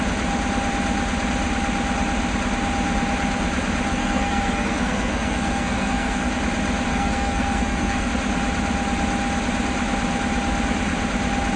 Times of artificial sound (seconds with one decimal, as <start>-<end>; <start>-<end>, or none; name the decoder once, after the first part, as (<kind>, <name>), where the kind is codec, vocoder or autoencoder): 3.9-6.3 (codec, SNAC); 6.9-8.1